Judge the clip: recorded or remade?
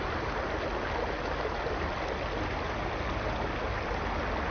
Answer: recorded